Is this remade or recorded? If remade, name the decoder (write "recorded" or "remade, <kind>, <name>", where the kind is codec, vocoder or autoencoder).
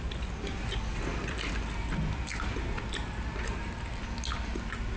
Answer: recorded